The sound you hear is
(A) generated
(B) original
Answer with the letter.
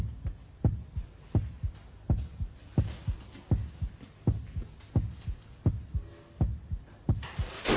B